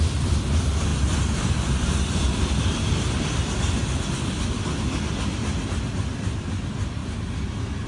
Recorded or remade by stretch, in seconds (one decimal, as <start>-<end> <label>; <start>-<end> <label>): 0.0-7.9 recorded